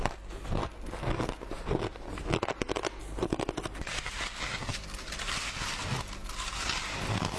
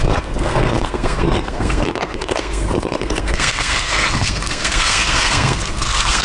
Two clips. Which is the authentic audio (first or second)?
first